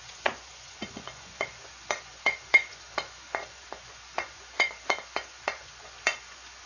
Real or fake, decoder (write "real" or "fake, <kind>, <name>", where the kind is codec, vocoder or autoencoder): fake, vocoder, Vocos